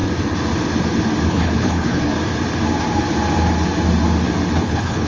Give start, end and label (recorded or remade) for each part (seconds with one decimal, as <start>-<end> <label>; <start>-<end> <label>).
0.0-1.3 recorded; 1.3-2.1 remade; 2.1-4.6 recorded; 4.6-5.1 remade